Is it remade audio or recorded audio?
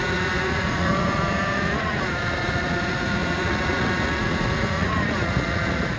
remade